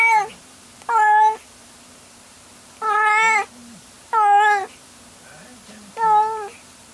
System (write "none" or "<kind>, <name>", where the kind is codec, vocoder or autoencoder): none